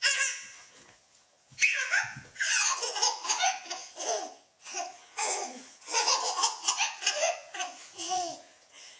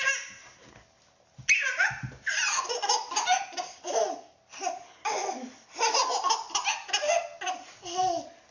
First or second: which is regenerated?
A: first